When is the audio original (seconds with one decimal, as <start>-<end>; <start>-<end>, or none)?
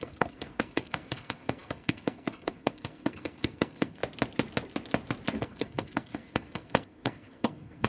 4.0-5.4